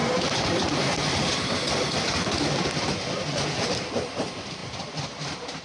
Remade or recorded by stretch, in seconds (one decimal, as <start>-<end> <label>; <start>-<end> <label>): 0.0-5.6 recorded